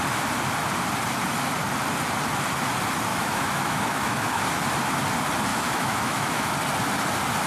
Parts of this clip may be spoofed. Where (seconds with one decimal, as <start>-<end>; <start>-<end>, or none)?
3.1-4.4; 5.5-6.5